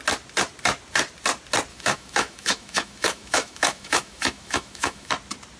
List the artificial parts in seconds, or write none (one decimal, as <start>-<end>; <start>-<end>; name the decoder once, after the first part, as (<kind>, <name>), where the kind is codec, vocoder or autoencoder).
1.7-5.1 (autoencoder, DAC-VAE)